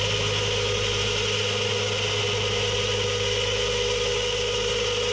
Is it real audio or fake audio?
real